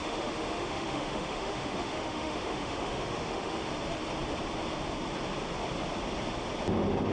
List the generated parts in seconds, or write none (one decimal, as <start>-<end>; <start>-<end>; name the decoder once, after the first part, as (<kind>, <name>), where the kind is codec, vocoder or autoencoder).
0.0-3.7 (autoencoder, DAC-VAE)